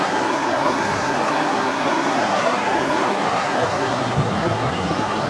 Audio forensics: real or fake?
fake